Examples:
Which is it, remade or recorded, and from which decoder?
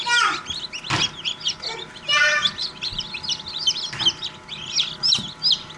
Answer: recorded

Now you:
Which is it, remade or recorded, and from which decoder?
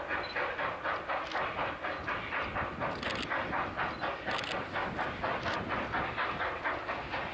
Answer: recorded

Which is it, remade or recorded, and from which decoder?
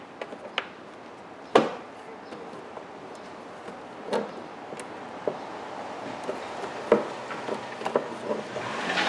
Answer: recorded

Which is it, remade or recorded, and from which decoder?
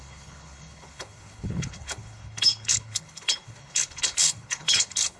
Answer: remade, codec, HILCodec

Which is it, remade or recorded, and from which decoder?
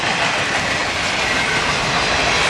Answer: recorded